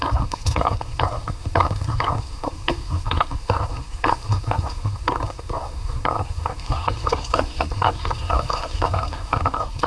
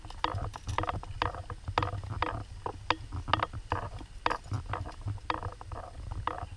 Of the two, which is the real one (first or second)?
second